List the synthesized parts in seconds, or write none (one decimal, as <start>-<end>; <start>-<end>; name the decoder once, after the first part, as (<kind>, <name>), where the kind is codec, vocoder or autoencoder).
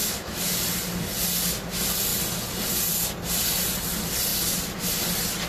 0.0-0.6 (autoencoder, DAC-VAE)